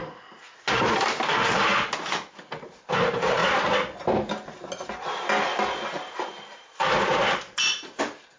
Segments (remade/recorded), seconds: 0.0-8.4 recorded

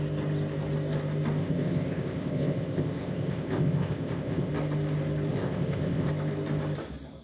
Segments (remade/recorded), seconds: 0.0-1.4 recorded; 1.4-4.5 remade; 4.5-5.3 recorded; 5.3-6.1 remade; 6.1-7.2 recorded

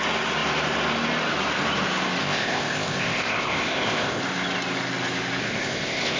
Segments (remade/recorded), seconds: 0.0-2.2 recorded; 2.2-4.2 remade; 4.2-5.4 recorded; 5.4-6.2 remade